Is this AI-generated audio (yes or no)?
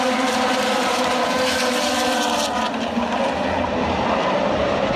yes